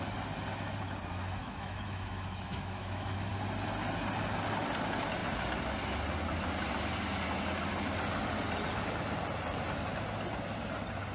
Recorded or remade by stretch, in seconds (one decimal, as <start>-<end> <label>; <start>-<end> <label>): 0.0-1.4 recorded; 1.4-3.3 remade; 3.3-11.1 recorded